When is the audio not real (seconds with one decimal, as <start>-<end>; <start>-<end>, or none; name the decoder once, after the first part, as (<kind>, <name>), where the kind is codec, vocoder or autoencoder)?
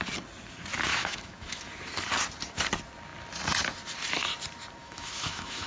0.9-1.7 (autoencoder, DAC-VAE); 4.8-5.7